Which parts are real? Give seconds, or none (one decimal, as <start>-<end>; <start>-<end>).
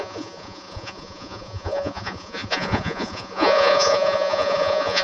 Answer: none